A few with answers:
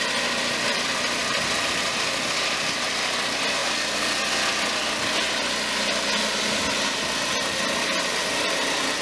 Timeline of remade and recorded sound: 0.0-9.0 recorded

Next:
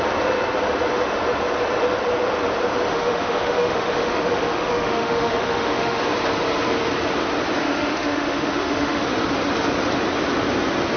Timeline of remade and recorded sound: 0.0-2.9 recorded; 2.9-6.0 remade; 6.0-7.6 recorded; 7.6-9.0 remade; 9.0-11.0 recorded

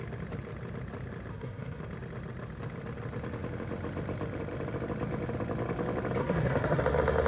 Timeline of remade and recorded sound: 0.0-1.3 recorded; 1.3-1.8 remade; 1.8-6.2 recorded; 6.2-6.8 remade; 6.8-7.3 recorded

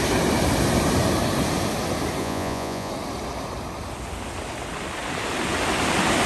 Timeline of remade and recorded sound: 0.0-2.2 recorded; 2.2-2.9 remade; 2.9-6.3 recorded